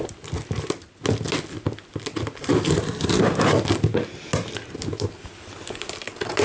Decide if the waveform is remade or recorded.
recorded